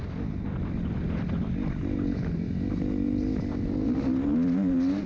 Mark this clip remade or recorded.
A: recorded